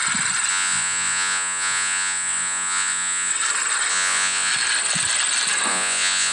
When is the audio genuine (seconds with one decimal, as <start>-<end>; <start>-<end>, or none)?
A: 0.0-0.5; 3.3-3.9; 4.5-5.7